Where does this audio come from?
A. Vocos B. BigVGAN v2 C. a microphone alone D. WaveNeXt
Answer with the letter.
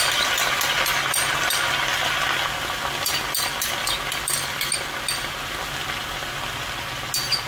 C